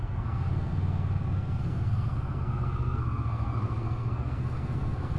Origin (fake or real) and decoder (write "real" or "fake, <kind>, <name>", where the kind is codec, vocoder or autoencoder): fake, codec, SNAC